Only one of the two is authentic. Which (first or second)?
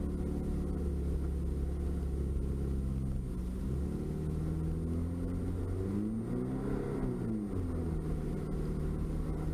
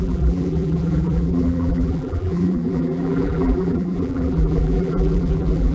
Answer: first